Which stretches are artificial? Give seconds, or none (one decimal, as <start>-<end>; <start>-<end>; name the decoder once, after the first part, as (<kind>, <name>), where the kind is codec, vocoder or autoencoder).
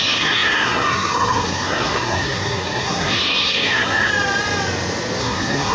0.0-4.1 (codec, SNAC); 5.2-5.7